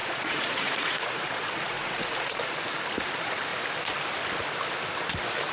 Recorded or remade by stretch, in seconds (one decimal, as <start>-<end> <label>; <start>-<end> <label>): 0.0-2.5 remade; 2.5-5.5 recorded